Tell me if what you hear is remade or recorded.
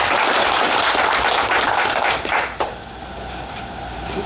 remade